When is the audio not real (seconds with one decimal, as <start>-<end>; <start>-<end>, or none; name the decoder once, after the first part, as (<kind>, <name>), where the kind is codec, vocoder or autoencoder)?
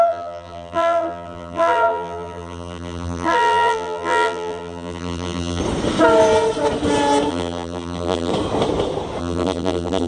0.0-5.6 (vocoder, BigVGAN v2); 7.3-8.3; 9.2-10.1